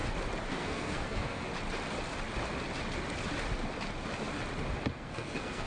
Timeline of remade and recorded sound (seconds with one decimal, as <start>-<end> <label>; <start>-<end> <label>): 0.0-0.5 recorded; 0.5-1.5 remade; 1.5-4.9 recorded; 4.9-5.7 remade